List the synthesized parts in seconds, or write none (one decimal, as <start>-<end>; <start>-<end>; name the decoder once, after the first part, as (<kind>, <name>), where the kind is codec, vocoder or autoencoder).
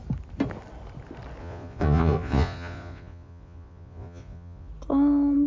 1.4-4.7 (vocoder, Vocos)